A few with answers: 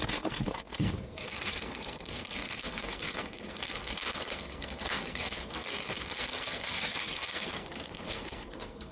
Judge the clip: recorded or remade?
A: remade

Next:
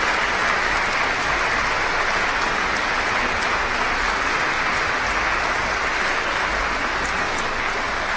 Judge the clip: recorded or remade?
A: recorded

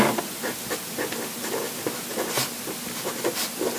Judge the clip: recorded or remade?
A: recorded